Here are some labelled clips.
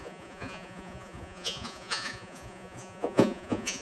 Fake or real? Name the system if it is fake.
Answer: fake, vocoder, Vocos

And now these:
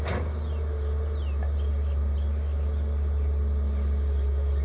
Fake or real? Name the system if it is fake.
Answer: real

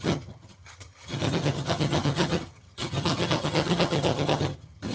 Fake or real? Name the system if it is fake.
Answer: fake, vocoder, HiFi-GAN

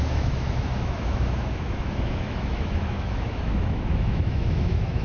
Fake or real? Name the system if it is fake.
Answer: fake, autoencoder, DAC-VAE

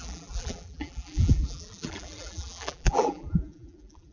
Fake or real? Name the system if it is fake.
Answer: fake, vocoder, BigVGAN v2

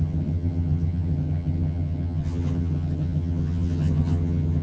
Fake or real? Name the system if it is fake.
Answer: fake, vocoder, HiFi-GAN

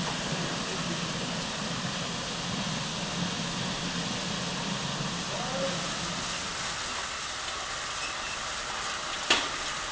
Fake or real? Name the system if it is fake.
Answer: real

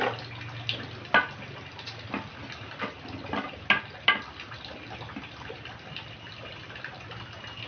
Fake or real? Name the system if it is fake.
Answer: real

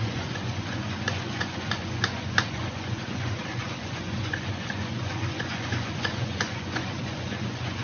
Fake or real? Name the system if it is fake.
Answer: fake, vocoder, Vocos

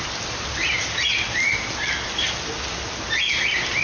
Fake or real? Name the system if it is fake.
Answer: real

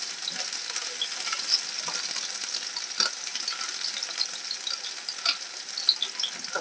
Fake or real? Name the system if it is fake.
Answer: real